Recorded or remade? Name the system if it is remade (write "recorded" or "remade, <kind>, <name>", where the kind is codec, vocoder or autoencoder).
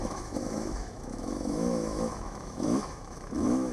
remade, autoencoder, DAC-VAE